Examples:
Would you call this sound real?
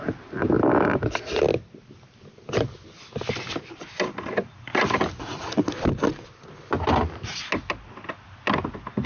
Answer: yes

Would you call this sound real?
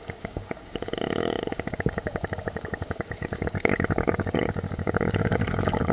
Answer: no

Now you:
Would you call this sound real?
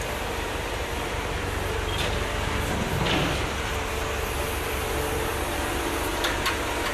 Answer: yes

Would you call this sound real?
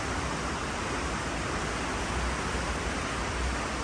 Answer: yes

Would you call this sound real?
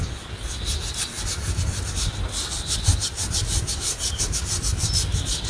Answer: yes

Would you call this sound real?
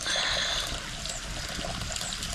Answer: yes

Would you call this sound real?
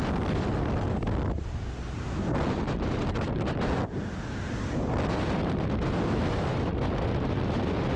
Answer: yes